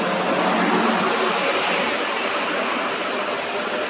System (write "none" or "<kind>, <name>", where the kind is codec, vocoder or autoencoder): none